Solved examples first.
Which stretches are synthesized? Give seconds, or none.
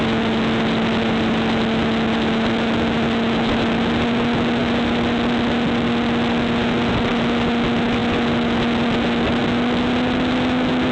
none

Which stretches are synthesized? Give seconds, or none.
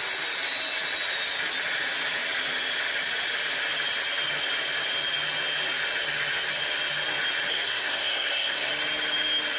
7.5-8.7 (codec, SNAC)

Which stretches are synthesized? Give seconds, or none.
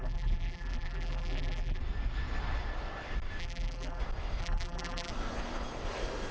0.0-1.8 (vocoder, BigVGAN v2); 3.4-4.0; 4.4-5.1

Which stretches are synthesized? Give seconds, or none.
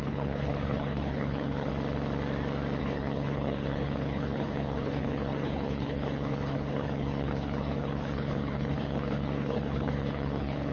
0.0-1.7 (codec, HILCodec); 2.8-10.7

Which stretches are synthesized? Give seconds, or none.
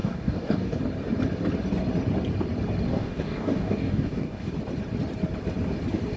0.0-0.8 (codec, DAC); 2.9-4.5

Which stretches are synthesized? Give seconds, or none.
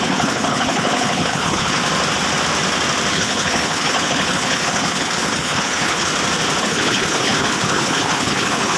0.0-1.8 (codec, HILCodec); 3.1-6.1; 6.6-8.8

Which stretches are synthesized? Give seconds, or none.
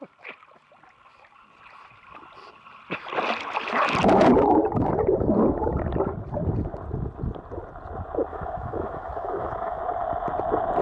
8.3-9.8 (autoencoder, DAC-VAE)